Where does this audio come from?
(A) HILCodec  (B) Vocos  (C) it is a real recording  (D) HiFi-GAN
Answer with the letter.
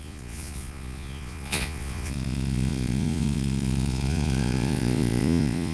B